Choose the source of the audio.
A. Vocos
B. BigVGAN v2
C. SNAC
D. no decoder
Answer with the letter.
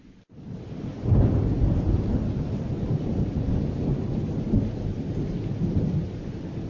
D